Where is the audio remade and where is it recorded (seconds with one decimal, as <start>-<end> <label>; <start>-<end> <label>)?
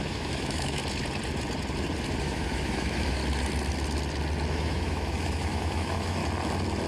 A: 0.0-0.8 remade; 0.8-2.2 recorded; 2.2-3.2 remade; 3.2-4.5 recorded; 4.5-6.2 remade; 6.2-6.9 recorded